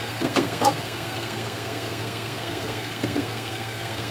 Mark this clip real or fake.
fake